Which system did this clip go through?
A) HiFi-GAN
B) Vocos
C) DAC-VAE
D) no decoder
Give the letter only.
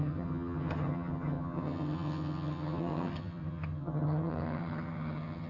A